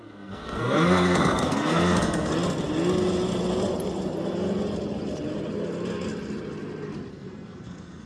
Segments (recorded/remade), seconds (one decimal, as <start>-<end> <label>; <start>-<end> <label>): 0.0-2.3 remade; 2.3-7.1 recorded; 7.1-8.1 remade